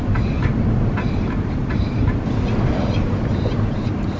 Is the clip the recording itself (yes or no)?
yes